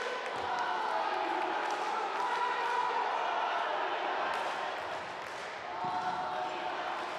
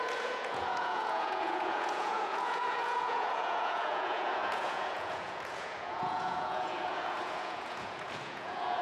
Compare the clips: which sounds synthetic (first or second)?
second